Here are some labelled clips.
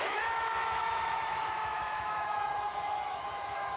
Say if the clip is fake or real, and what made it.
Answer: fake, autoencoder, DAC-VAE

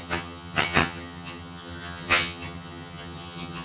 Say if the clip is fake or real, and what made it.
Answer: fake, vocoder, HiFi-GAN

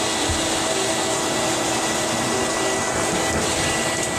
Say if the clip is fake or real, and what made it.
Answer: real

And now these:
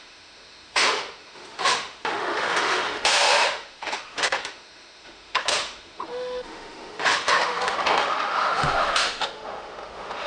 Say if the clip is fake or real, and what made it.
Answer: fake, autoencoder, DAC-VAE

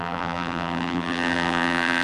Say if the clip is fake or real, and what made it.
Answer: fake, vocoder, BigVGAN v2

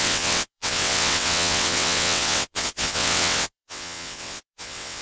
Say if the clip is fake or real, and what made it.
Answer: fake, vocoder, WaveNeXt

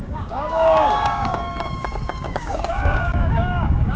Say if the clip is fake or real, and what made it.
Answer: fake, codec, DAC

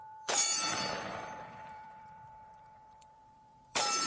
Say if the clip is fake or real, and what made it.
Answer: fake, vocoder, BigVGAN v2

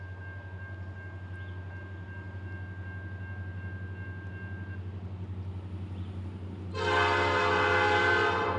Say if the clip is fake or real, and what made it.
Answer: real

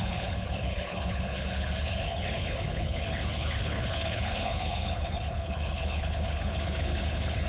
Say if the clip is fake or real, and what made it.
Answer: fake, codec, HILCodec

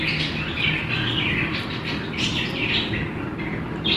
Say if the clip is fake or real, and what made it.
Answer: real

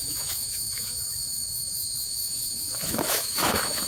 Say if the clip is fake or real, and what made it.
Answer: fake, autoencoder, DAC-VAE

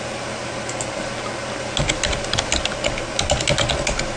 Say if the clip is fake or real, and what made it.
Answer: real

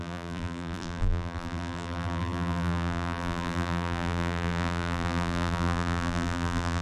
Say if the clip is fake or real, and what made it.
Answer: fake, vocoder, BigVGAN v2